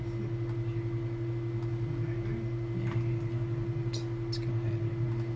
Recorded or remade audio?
recorded